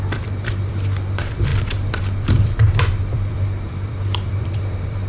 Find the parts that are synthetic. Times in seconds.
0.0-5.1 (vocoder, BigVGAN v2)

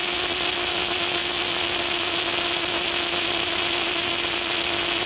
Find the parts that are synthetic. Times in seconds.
none

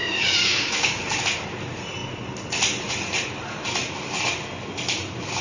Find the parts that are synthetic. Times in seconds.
0.0-1.0 (codec, DAC)

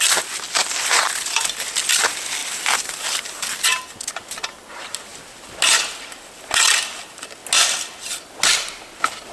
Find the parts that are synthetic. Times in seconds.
2.4-3.6 (vocoder, BigVGAN v2)